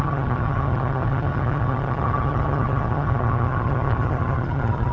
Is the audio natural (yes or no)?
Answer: no